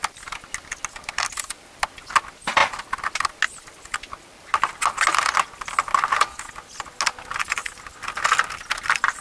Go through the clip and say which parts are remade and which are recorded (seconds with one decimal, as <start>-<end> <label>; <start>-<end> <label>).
0.0-9.2 recorded